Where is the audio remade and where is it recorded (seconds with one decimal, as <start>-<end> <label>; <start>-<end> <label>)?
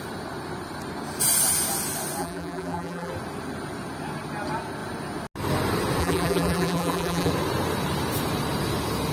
0.0-2.2 recorded; 2.2-3.1 remade; 3.1-6.0 recorded; 6.0-7.3 remade; 7.3-9.1 recorded